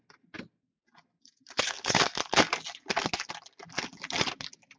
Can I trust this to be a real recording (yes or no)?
yes